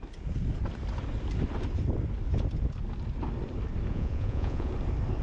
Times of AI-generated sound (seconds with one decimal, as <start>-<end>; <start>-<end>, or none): 3.9-4.7